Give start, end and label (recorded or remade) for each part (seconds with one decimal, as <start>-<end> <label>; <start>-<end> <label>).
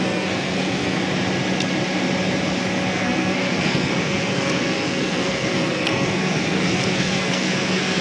0.0-1.0 remade; 1.0-2.9 recorded; 2.9-8.0 remade